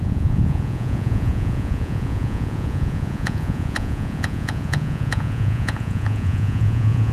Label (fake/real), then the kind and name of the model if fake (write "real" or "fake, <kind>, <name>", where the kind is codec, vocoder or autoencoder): fake, vocoder, Vocos